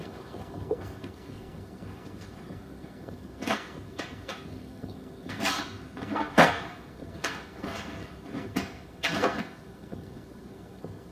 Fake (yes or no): yes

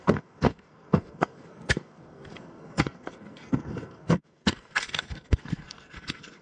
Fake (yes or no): yes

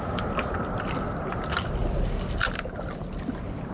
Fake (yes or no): no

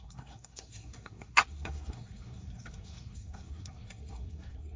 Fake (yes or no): yes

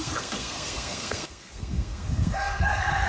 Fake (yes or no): yes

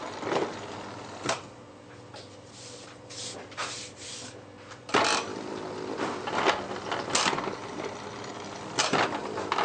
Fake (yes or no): no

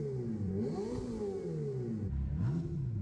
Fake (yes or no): no